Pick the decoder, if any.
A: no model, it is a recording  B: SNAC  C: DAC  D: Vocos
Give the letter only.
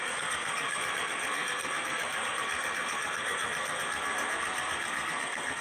B